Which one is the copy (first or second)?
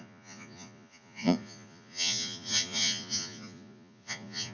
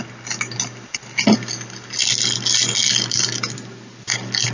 first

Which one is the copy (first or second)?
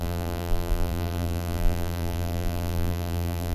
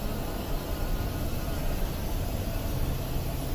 first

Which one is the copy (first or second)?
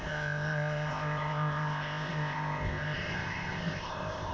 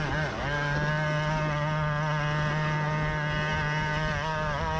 first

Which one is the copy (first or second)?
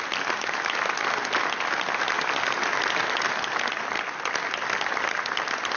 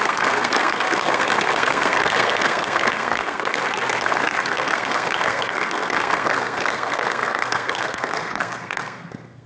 second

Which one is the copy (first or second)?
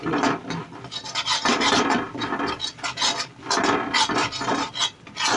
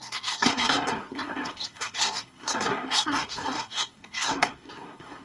second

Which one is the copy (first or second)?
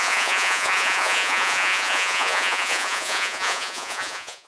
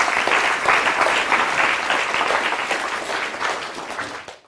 first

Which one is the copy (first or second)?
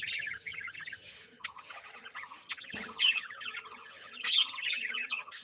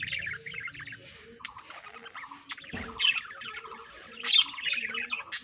first